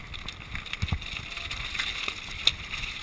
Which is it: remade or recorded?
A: recorded